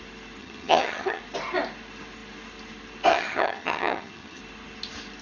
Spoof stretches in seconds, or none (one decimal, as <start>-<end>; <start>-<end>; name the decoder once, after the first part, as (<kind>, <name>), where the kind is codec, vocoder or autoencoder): 0.4-1.2 (vocoder, HiFi-GAN); 3.1-4.4